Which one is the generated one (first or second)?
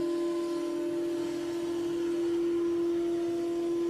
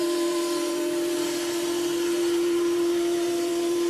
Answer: second